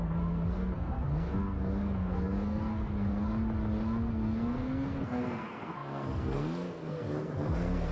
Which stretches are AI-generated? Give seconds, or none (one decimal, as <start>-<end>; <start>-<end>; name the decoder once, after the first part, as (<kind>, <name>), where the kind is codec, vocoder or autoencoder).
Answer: 0.0-3.3 (codec, SNAC); 4.1-7.9